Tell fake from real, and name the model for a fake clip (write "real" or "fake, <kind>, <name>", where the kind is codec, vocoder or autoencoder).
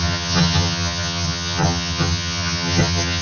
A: fake, vocoder, HiFi-GAN